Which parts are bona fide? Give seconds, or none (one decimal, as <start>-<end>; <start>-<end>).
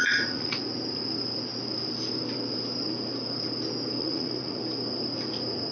0.6-4.0; 4.6-5.7